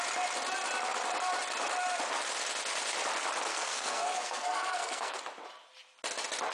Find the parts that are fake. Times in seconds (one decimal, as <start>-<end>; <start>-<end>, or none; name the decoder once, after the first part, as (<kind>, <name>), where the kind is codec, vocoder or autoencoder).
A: 3.5-5.2 (codec, SNAC)